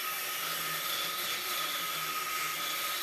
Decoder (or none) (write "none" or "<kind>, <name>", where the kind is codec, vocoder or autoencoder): none